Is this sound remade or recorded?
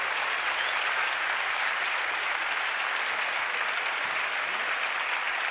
recorded